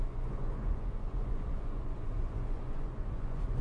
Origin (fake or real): fake